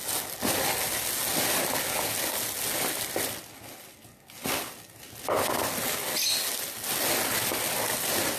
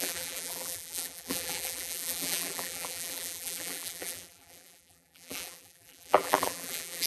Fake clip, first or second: second